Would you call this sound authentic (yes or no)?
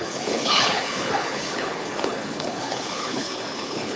no